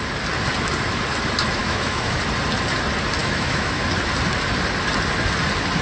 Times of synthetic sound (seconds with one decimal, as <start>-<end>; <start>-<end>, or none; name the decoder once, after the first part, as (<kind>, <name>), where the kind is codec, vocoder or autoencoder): 1.6-2.2 (autoencoder, DAC-VAE); 3.2-3.8